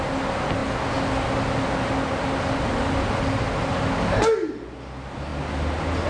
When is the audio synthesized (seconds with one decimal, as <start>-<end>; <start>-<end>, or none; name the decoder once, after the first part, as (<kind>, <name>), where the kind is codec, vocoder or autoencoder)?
none